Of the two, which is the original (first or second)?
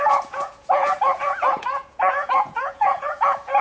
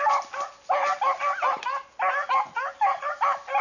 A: second